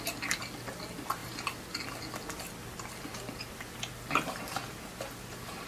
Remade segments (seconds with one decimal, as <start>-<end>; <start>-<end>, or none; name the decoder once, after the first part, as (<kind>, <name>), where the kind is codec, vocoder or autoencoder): none